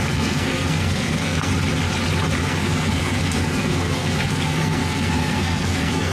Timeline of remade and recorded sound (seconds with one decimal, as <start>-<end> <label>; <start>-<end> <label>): 0.0-1.5 remade; 1.5-2.4 recorded; 2.4-6.1 remade